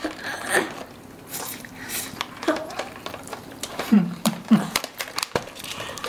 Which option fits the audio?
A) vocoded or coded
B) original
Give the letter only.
A